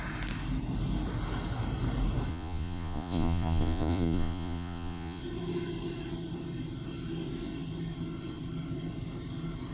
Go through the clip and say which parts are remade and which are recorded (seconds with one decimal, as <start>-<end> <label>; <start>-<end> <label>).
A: 0.0-2.3 recorded; 2.3-5.2 remade; 5.2-9.7 recorded